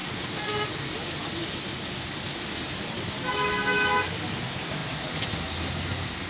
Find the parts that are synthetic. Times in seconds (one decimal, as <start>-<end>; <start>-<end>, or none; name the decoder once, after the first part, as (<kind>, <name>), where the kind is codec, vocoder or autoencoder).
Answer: none